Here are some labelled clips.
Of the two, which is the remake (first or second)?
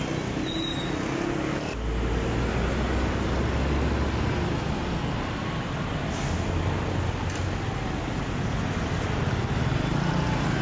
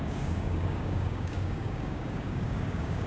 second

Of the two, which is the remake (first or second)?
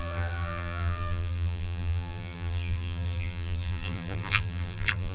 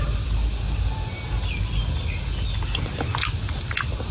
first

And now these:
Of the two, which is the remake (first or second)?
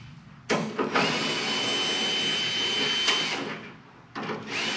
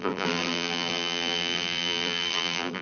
second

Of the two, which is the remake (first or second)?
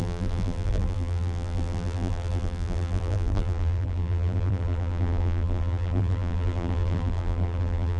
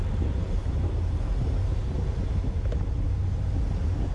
first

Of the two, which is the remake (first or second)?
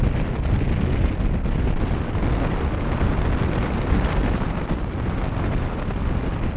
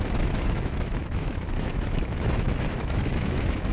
second